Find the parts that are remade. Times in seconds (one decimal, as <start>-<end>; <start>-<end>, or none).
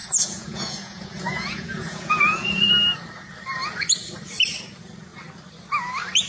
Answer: 0.0-2.7